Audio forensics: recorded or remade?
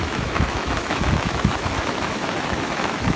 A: remade